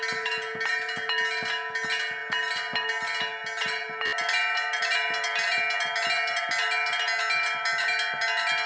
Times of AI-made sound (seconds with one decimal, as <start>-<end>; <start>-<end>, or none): none